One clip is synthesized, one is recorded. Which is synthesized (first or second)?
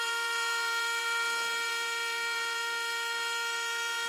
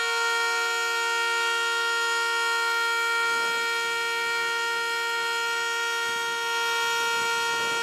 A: first